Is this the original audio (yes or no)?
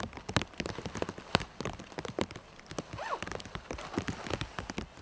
yes